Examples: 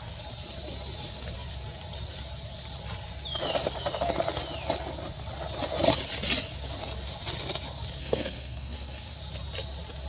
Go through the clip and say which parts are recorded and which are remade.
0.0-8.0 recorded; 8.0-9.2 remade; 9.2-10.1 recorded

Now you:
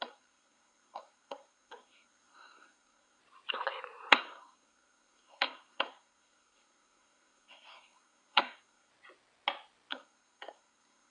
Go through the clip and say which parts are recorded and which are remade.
0.0-3.2 remade; 3.2-4.1 recorded; 4.1-8.9 remade; 8.9-9.9 recorded; 9.9-11.1 remade

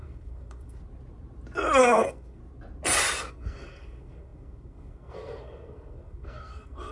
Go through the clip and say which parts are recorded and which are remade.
0.0-0.8 remade; 0.8-1.8 recorded; 1.8-2.4 remade; 2.4-3.3 recorded; 3.3-6.9 remade

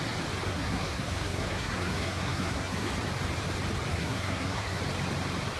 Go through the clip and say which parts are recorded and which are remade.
0.0-0.5 recorded; 0.5-2.9 remade; 2.9-3.9 recorded; 3.9-4.8 remade; 4.8-5.6 recorded

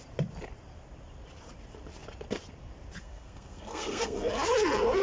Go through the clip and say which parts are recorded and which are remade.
0.0-3.0 recorded; 3.0-4.3 remade; 4.3-5.0 recorded